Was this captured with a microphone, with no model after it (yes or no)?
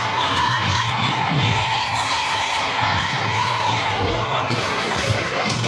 no